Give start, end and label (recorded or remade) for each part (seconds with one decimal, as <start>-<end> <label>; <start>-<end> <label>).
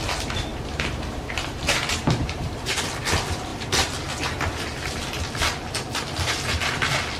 0.0-0.5 recorded; 0.5-2.8 remade; 2.8-7.2 recorded